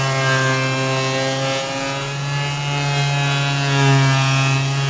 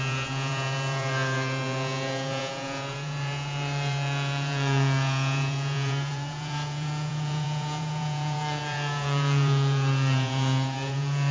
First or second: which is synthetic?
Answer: second